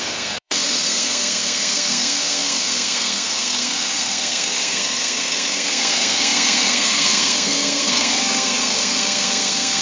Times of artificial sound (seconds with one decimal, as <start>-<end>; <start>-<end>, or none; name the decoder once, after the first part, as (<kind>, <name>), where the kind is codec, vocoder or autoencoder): 0.0-9.8 (codec, SNAC)